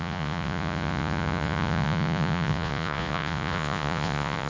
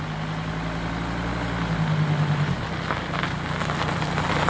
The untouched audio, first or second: second